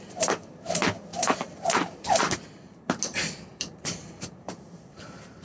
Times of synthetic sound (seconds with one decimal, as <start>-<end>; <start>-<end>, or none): 1.1-2.2; 3.5-5.4